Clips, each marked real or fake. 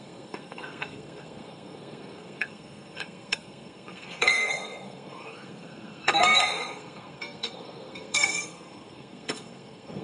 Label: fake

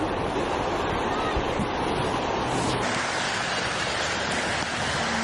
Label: real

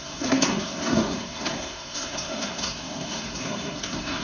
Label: fake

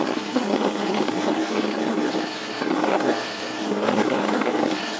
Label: fake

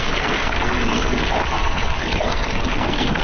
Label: fake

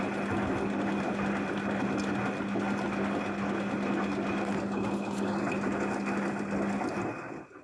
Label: real